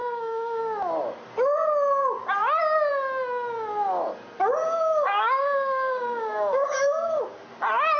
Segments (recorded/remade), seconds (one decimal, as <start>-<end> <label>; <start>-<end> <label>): 0.0-0.6 remade; 0.6-4.6 recorded; 4.6-7.2 remade; 7.2-8.0 recorded